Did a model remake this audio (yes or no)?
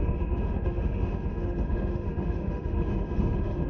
yes